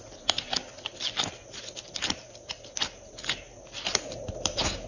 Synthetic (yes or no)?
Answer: no